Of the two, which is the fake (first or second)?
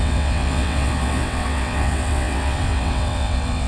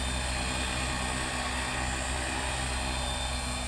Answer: first